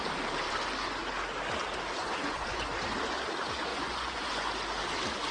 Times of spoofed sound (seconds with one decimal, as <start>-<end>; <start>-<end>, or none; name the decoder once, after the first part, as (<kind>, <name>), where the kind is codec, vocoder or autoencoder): 2.0-2.7 (vocoder, Vocos); 3.7-4.5